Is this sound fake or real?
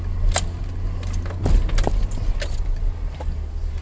real